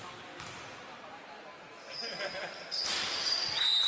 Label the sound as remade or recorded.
recorded